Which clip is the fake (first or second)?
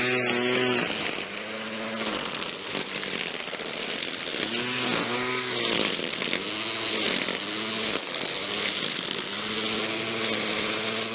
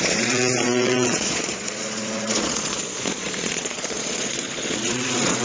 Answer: second